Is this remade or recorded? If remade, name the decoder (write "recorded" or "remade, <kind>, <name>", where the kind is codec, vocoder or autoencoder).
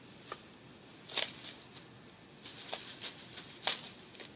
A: recorded